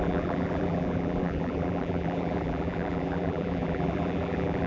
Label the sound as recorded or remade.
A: remade